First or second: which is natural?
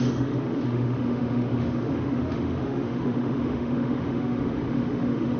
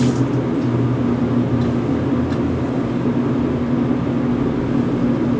second